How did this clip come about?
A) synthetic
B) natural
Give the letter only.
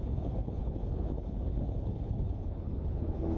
A